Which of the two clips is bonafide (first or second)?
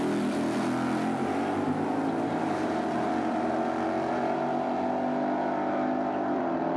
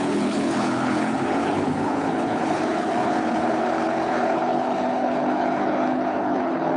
first